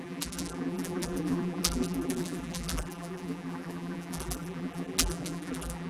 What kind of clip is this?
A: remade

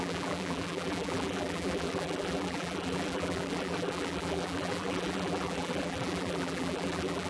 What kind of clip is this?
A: remade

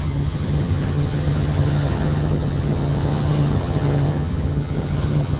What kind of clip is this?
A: remade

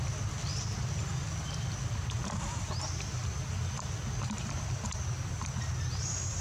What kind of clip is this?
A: recorded